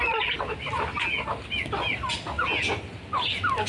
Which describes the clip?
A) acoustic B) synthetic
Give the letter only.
A